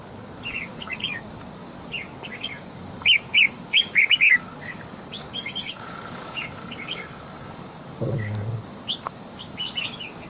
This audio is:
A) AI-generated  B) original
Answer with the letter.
A